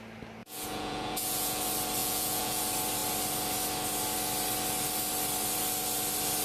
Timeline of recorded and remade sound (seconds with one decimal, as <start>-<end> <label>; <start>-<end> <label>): 0.0-0.4 recorded; 0.4-1.6 remade; 1.6-2.0 recorded; 2.0-2.6 remade; 2.6-6.4 recorded